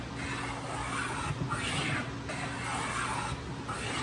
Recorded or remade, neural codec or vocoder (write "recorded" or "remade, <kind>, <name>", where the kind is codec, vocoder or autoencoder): recorded